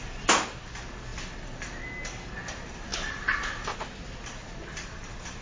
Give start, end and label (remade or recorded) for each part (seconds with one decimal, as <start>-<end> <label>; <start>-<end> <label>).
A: 0.0-5.4 recorded